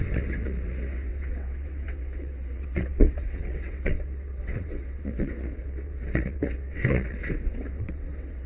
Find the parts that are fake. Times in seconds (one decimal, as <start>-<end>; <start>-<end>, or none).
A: 0.0-8.5